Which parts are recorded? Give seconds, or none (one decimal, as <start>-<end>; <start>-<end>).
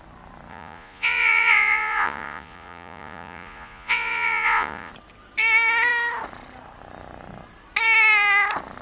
0.0-0.5; 4.9-8.8